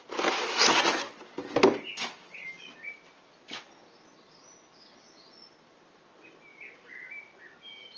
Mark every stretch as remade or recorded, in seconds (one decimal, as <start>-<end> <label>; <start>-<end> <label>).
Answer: 0.0-8.0 recorded